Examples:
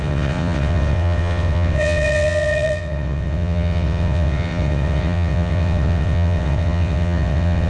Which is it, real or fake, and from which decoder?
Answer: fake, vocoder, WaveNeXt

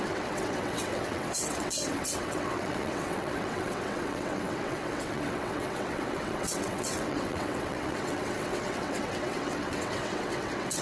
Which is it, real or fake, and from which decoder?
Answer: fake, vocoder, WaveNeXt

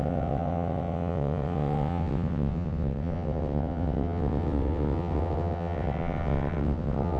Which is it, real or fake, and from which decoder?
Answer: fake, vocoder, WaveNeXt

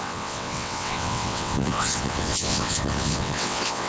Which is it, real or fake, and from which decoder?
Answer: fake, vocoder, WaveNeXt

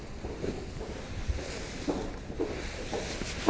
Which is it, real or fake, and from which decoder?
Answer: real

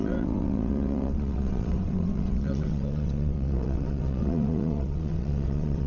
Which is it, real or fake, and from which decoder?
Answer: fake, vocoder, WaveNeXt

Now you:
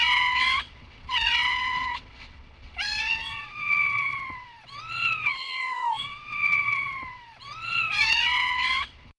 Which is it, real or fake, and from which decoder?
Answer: fake, vocoder, WaveNeXt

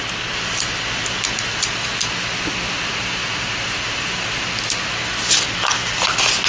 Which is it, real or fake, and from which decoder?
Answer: real